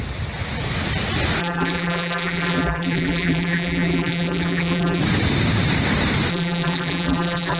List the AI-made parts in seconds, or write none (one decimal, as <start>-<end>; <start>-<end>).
1.4-5.0; 6.3-7.6